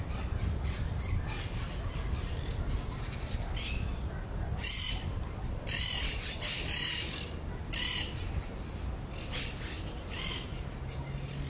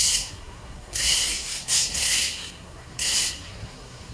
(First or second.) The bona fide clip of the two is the first